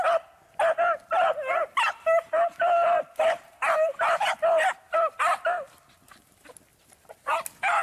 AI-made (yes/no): no